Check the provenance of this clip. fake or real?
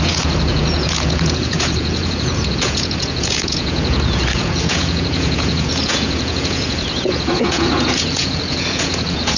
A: fake